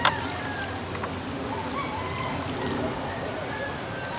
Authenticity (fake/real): real